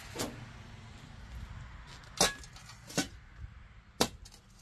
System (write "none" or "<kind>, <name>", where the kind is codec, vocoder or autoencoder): none